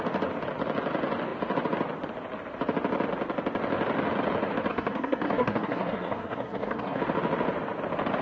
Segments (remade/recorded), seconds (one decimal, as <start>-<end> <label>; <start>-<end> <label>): 0.0-4.7 recorded; 4.7-7.0 remade; 7.0-8.2 recorded